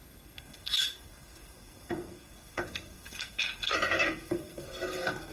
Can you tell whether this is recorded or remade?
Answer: remade